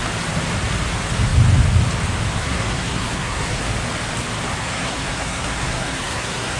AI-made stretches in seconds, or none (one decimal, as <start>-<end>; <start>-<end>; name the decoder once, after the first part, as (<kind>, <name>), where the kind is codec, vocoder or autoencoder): 2.4-3.6 (codec, SNAC); 4.6-6.6